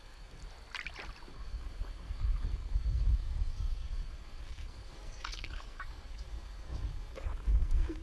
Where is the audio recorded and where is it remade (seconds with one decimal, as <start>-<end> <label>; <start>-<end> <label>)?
0.0-0.4 remade; 0.4-1.3 recorded; 1.3-8.0 remade